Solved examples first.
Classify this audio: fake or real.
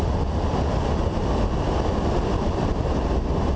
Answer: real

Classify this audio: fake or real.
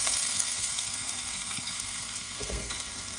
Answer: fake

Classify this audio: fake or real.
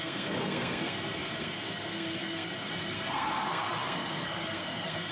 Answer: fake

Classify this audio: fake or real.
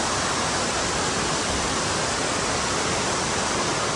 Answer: real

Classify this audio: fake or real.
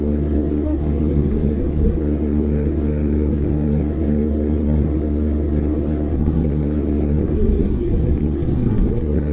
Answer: fake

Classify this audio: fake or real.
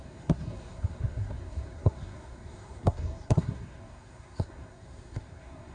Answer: fake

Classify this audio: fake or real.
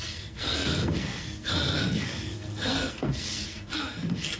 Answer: fake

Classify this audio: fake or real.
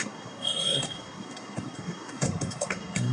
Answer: fake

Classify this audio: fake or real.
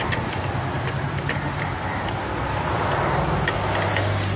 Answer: real